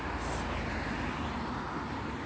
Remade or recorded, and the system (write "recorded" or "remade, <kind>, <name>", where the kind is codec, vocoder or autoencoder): recorded